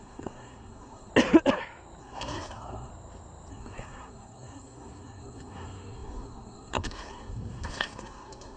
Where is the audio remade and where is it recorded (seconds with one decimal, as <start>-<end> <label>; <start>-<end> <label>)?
0.0-1.1 remade; 1.1-2.0 recorded; 2.0-2.9 remade; 2.9-3.5 recorded; 3.5-8.6 remade